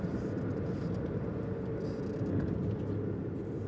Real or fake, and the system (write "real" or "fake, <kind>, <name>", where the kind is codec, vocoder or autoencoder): real